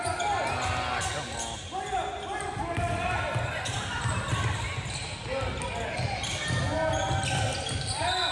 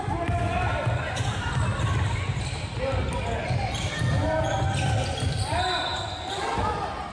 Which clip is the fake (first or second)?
second